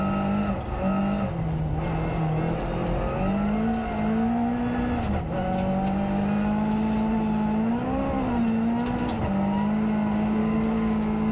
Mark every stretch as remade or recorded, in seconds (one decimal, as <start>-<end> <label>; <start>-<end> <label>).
0.0-10.4 recorded; 10.4-11.3 remade